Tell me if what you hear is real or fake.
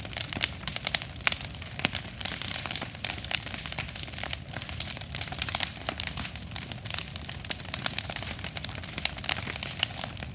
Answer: real